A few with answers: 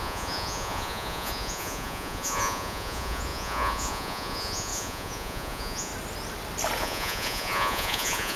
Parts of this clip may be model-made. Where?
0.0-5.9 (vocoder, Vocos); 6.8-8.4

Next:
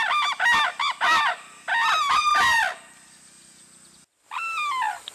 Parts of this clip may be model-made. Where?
none

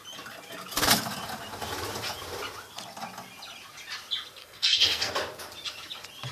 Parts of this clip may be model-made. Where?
4.4-5.1 (codec, SNAC)

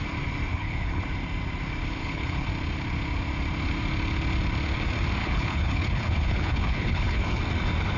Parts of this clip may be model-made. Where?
0.5-1.0 (codec, HILCodec); 2.0-2.5; 5.2-7.4

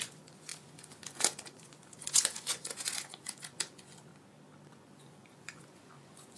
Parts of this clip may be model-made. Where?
0.0-4.1 (vocoder, Vocos); 4.7-6.4